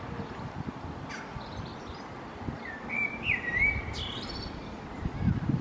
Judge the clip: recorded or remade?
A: recorded